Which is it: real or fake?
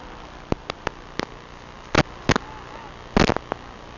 real